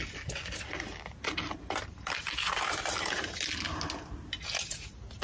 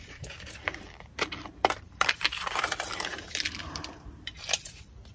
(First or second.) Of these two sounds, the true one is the first